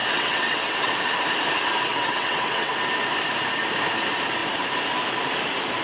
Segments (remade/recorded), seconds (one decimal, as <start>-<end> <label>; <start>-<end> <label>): 0.0-0.9 remade; 0.9-1.9 recorded; 1.9-2.7 remade; 2.7-5.8 recorded